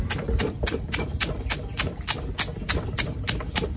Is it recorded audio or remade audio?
recorded